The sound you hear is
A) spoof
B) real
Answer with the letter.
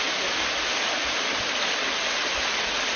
B